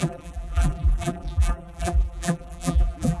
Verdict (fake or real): fake